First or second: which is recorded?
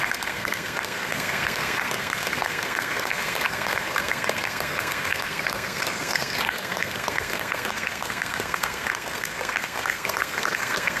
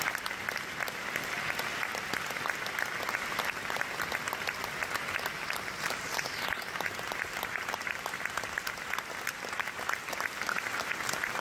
second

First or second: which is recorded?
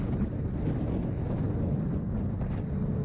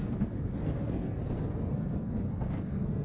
first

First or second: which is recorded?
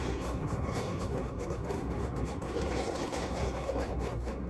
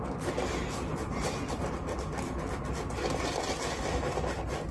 second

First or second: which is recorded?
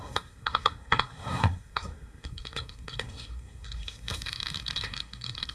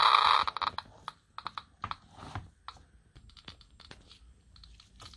second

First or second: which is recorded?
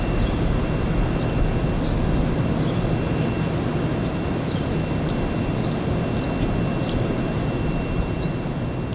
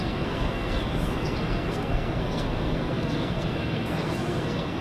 first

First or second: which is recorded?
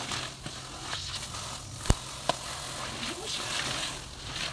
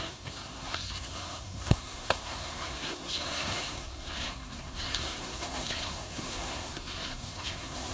first